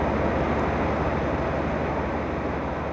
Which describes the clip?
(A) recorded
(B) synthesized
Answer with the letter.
A